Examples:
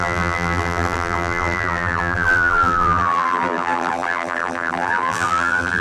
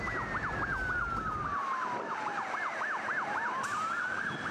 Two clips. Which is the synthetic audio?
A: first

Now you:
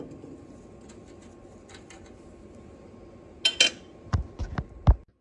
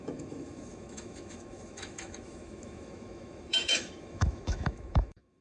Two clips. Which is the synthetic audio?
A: second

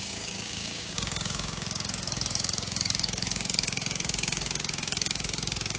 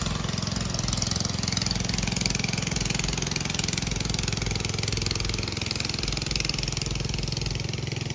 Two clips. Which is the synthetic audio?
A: first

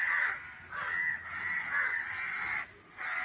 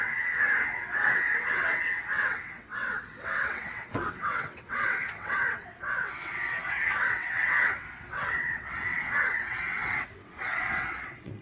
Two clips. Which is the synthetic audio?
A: second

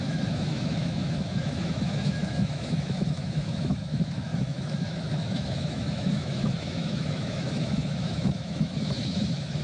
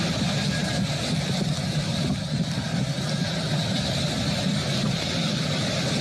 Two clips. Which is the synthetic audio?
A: first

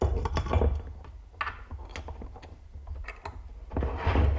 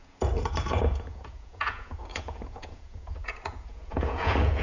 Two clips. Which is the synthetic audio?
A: second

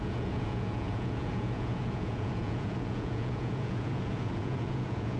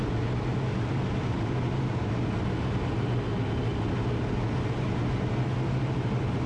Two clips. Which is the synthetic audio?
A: first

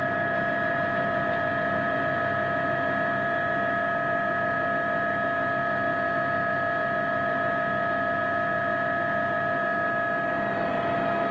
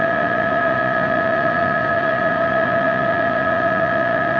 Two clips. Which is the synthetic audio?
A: second